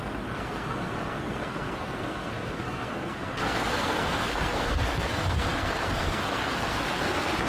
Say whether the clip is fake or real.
fake